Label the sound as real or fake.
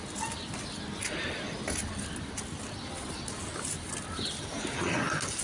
real